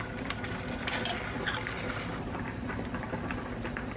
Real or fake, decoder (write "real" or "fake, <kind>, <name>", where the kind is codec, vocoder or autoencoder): real